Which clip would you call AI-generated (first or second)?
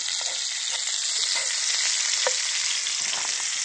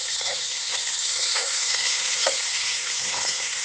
second